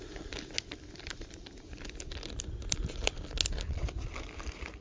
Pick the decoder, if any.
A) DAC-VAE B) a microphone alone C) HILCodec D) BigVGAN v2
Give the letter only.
B